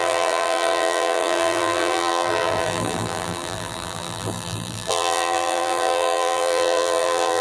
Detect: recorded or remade remade